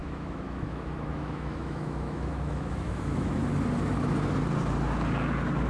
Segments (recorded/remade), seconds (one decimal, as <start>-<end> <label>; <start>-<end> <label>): 0.0-3.4 remade; 3.4-5.7 recorded